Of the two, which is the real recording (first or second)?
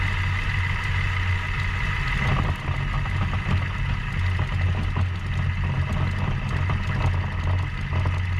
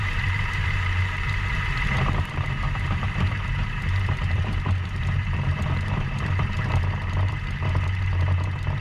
first